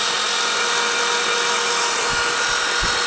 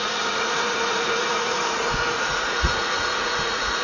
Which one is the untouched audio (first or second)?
first